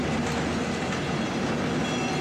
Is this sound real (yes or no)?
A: yes